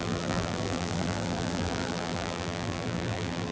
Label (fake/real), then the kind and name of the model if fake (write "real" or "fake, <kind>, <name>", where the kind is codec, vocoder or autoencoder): fake, vocoder, BigVGAN v2